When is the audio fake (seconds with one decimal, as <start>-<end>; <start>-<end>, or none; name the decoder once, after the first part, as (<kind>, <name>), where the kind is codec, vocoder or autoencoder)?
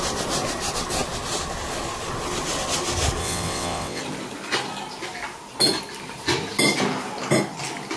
3.2-4.0 (vocoder, WaveNeXt)